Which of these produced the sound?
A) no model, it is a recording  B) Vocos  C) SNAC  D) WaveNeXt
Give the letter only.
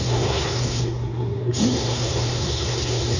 C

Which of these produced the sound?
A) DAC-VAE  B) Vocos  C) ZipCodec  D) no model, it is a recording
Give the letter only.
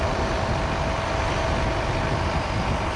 D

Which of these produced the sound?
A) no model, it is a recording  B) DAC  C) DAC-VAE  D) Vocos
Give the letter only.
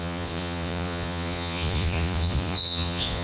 D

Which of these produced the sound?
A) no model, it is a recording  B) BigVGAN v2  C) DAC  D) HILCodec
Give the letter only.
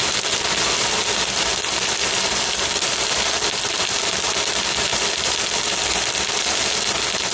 A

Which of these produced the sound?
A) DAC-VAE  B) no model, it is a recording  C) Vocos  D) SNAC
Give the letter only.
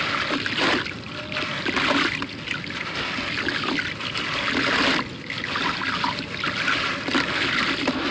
B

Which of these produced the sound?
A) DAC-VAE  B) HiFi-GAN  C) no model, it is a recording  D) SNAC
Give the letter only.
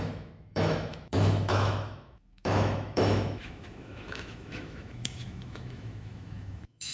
A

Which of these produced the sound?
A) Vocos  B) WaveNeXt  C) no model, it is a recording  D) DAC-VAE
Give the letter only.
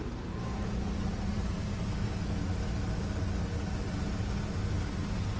C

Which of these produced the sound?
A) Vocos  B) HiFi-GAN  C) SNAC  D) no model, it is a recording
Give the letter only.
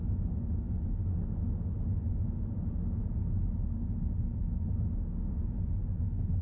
D